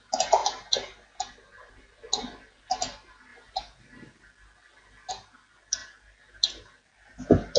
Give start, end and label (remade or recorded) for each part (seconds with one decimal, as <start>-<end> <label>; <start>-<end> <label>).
0.0-7.6 recorded